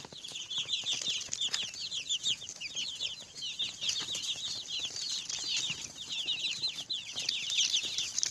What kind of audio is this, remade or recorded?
recorded